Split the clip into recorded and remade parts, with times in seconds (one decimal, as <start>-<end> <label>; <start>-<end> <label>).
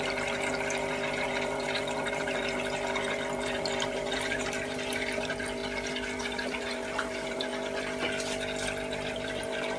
0.0-5.6 remade; 5.6-6.2 recorded; 6.2-7.5 remade; 7.5-9.1 recorded; 9.1-9.8 remade